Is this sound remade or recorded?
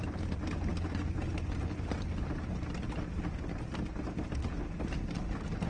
recorded